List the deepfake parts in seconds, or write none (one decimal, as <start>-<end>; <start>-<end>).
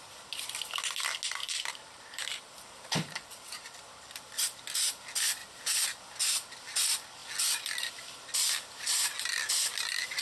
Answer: 1.4-3.8; 5.4-6.1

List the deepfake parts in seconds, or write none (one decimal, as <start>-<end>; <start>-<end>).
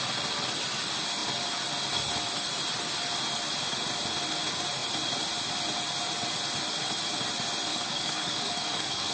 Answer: 7.7-9.1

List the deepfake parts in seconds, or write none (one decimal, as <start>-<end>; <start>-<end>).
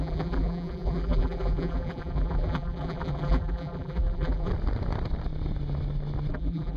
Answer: 0.0-4.5; 6.3-6.8